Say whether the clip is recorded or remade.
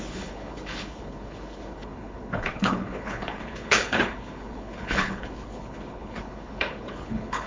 remade